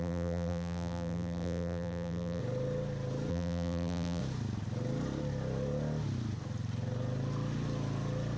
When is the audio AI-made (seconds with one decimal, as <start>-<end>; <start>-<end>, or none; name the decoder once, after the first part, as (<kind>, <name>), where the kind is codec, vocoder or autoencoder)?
0.0-2.4 (vocoder, BigVGAN v2); 3.3-4.2